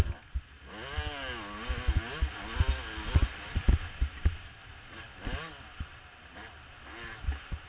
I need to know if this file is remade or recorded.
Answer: recorded